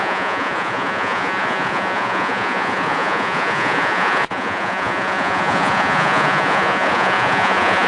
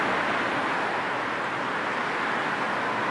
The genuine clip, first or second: second